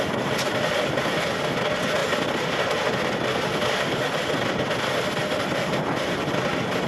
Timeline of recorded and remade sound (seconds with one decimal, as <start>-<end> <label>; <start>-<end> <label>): 0.0-6.9 recorded